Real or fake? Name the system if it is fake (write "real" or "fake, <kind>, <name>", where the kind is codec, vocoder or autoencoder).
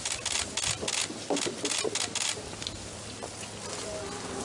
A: real